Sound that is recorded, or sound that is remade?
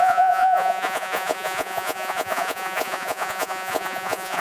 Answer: remade